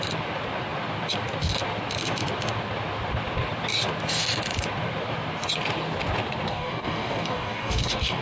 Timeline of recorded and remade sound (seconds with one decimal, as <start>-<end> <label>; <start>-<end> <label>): 0.0-6.5 recorded; 6.5-8.2 remade